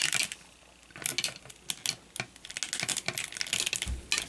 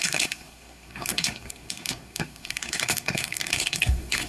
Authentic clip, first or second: first